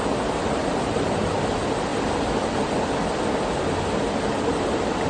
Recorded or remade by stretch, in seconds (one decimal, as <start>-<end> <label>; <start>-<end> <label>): 0.0-5.1 recorded